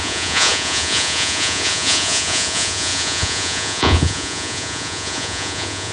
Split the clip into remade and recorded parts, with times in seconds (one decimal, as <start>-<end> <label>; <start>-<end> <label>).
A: 0.0-5.9 remade